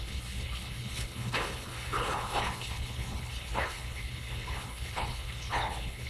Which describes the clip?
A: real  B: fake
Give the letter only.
B